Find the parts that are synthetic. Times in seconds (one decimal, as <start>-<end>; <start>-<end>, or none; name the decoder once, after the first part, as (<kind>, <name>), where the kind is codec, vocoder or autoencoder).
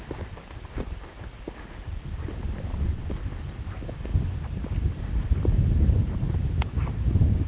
2.7-3.2 (vocoder, WaveNeXt)